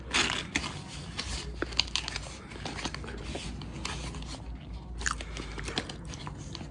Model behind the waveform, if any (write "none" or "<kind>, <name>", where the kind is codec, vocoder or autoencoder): none